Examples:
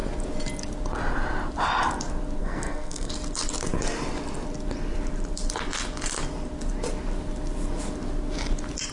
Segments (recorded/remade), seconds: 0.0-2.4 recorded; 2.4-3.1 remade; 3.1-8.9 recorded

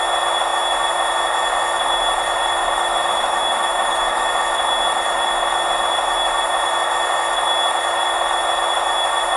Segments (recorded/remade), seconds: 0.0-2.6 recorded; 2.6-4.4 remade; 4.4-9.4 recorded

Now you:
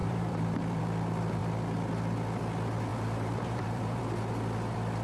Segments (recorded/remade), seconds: 0.0-0.8 remade; 0.8-2.9 recorded; 2.9-4.0 remade; 4.0-5.0 recorded

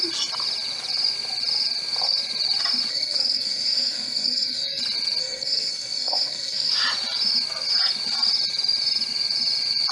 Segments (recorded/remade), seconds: 0.0-2.9 recorded; 2.9-4.8 remade; 4.8-5.2 recorded; 5.2-6.7 remade; 6.7-9.9 recorded

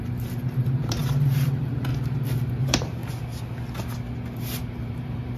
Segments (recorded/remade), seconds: 0.0-1.9 remade; 1.9-2.6 recorded; 2.6-3.0 remade; 3.0-4.4 recorded; 4.4-5.4 remade